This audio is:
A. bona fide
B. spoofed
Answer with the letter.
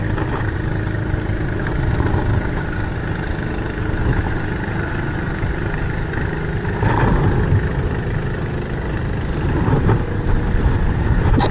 A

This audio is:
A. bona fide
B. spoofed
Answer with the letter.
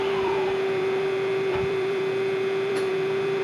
B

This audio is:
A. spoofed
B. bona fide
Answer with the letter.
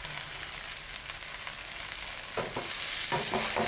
B